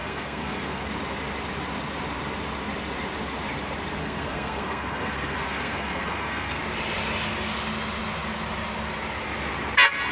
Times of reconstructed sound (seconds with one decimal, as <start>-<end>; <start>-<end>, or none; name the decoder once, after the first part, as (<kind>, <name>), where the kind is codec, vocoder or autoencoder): 0.0-0.8 (codec, SNAC); 4.0-6.6